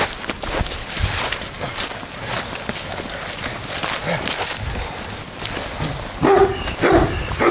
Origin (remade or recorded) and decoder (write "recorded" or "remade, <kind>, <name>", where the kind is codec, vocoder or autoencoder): recorded